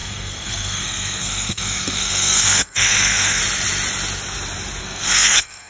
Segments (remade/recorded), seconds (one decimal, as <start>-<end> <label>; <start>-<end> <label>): 0.0-3.4 remade; 3.4-4.8 recorded; 4.8-5.7 remade